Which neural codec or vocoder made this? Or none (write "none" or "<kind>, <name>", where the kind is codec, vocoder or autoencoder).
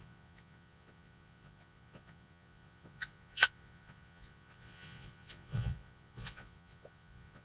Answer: vocoder, Vocos